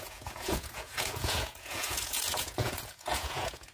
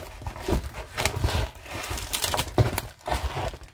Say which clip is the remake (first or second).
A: first